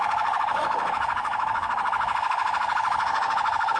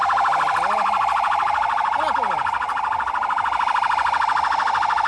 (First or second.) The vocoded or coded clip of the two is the first